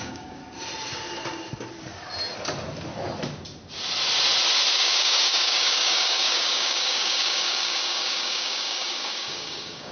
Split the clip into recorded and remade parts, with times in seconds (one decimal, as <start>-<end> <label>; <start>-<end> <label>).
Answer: 0.0-0.4 remade; 0.4-4.7 recorded; 4.7-9.9 remade

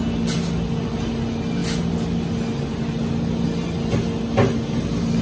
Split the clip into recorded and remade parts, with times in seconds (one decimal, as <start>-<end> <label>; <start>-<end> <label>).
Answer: 0.0-5.2 recorded

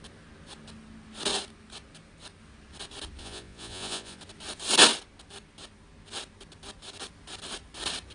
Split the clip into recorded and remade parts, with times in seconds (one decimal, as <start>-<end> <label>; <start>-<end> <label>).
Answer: 0.0-3.2 recorded; 3.2-4.2 remade; 4.2-8.1 recorded

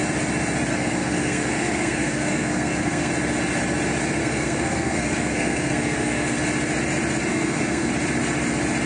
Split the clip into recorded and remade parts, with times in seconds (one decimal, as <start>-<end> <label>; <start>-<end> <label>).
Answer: 0.0-0.7 recorded; 0.7-3.1 remade; 3.1-4.2 recorded; 4.2-6.4 remade; 6.4-7.3 recorded; 7.3-7.9 remade; 7.9-8.9 recorded

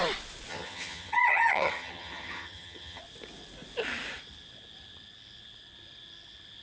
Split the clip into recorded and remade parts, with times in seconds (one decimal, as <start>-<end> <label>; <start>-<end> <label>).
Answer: 0.0-0.5 recorded; 0.5-3.0 remade; 3.0-6.6 recorded

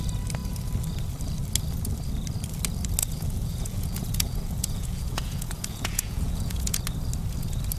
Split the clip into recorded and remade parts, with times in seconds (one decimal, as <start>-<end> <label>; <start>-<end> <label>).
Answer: 0.0-3.0 recorded; 3.0-6.8 remade; 6.8-7.8 recorded